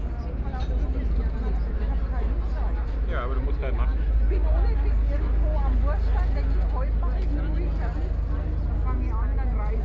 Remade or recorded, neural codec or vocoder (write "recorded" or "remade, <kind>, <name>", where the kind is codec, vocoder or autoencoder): recorded